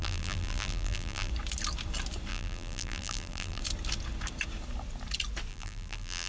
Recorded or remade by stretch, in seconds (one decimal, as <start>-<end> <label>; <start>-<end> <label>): 0.0-1.3 remade; 1.3-2.3 recorded; 2.3-3.6 remade; 3.6-5.5 recorded; 5.5-6.3 remade